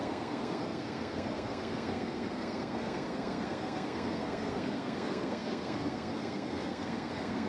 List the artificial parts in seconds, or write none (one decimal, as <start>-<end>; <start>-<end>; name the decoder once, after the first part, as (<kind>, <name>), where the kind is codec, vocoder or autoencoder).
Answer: 0.0-7.5 (codec, SNAC)

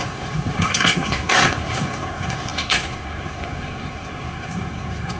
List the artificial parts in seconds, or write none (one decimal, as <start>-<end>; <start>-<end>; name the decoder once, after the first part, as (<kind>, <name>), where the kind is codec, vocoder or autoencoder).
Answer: 0.0-5.2 (codec, SNAC)